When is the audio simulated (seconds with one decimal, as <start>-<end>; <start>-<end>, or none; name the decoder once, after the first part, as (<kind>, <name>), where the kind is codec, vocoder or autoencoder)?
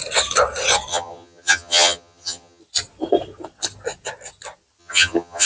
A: 0.9-2.6 (vocoder, HiFi-GAN); 4.8-5.5